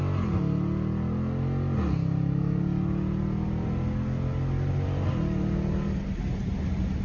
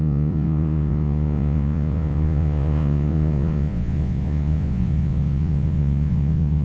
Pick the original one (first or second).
first